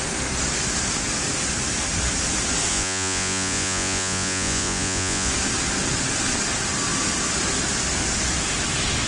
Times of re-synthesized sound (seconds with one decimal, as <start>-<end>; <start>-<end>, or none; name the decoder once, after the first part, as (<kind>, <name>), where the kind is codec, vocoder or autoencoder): 2.7-5.3 (vocoder, Vocos)